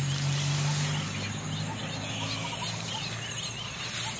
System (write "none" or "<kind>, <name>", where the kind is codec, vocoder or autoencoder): none